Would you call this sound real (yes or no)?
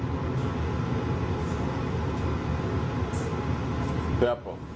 yes